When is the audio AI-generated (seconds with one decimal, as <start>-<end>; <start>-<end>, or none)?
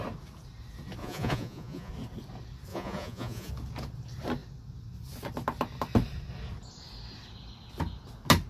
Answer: 1.0-1.9; 2.7-3.5